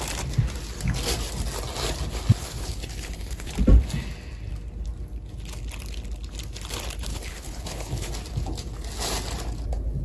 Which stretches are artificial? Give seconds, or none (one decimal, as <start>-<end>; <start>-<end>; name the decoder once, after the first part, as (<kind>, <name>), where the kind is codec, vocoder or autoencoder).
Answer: 2.4-3.5 (codec, HILCodec); 7.1-8.1